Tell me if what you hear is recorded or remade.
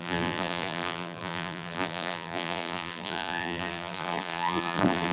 remade